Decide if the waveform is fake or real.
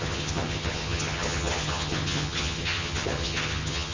fake